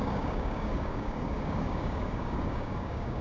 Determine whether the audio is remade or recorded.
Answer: remade